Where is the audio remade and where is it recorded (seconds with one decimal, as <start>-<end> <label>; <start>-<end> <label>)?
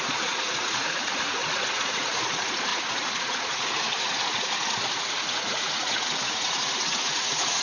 0.0-7.6 remade